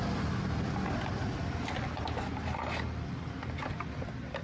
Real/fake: fake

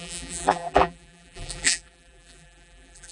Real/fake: fake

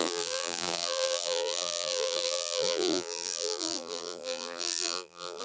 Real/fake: fake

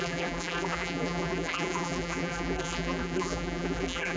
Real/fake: fake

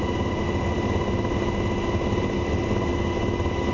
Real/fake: real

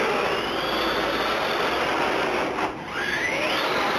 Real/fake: real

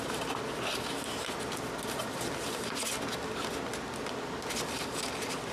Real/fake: real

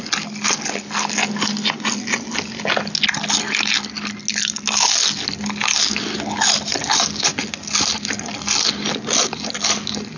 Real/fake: real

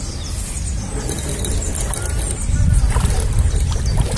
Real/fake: real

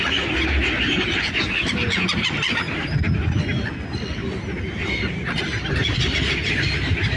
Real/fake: real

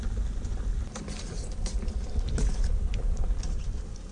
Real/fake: real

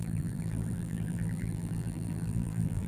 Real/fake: fake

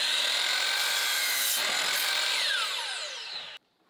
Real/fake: real